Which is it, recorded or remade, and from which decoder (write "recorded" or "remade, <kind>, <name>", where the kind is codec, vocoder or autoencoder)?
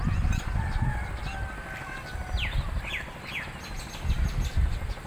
recorded